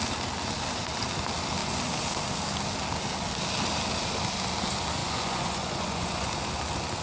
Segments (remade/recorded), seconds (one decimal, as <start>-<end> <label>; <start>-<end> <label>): 0.0-5.0 recorded; 5.0-6.3 remade; 6.3-7.0 recorded